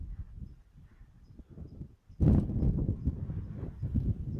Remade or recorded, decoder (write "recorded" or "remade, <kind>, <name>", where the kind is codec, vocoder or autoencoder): recorded